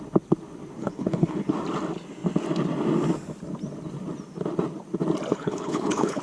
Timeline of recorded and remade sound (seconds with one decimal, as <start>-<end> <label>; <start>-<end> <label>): 0.0-0.8 recorded; 0.8-1.4 remade; 1.4-5.3 recorded; 5.3-6.2 remade